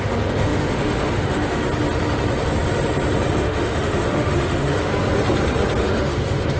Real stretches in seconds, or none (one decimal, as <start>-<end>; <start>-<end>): 1.6-3.3; 4.9-5.8